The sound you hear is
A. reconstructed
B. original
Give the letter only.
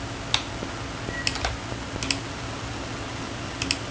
B